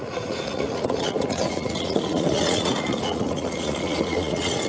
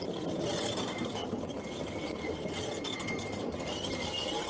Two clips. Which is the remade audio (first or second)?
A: first